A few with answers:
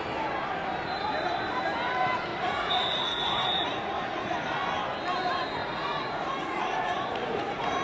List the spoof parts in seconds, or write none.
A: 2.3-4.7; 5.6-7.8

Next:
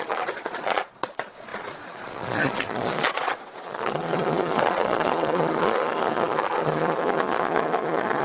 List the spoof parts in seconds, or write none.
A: 0.0-8.2

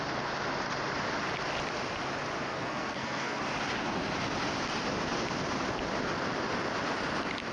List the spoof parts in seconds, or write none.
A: 2.5-3.4

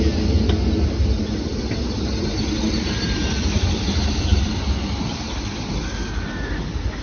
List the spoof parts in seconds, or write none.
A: 3.2-3.8; 4.3-6.5